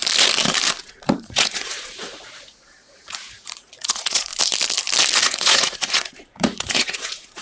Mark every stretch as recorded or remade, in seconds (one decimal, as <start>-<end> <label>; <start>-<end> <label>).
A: 0.0-0.8 recorded; 0.8-4.3 remade; 4.3-5.2 recorded; 5.2-7.4 remade